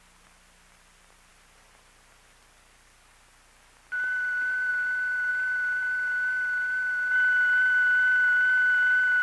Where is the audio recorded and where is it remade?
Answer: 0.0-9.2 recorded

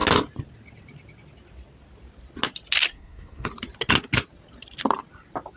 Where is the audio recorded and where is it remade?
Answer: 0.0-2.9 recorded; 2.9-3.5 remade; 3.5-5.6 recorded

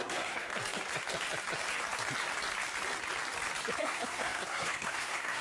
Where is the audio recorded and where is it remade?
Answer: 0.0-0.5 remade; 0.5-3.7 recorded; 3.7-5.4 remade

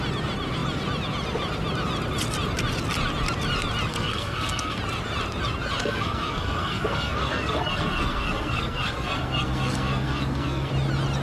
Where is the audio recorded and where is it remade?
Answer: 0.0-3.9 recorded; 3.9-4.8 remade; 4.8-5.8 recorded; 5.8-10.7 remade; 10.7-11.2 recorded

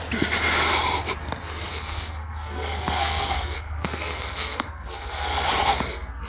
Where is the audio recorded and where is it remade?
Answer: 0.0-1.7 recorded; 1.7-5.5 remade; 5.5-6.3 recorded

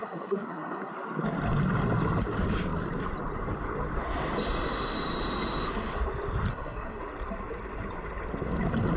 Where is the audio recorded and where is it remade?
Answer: 0.0-0.9 remade; 0.9-6.5 recorded; 6.5-7.0 remade; 7.0-9.0 recorded

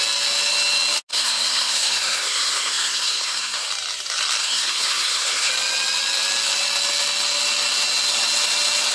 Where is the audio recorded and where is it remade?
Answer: 0.0-1.1 recorded; 1.1-3.7 remade; 3.7-4.4 recorded; 4.4-5.5 remade; 5.5-8.9 recorded